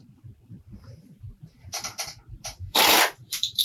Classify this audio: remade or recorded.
remade